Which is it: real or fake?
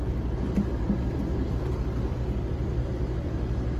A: fake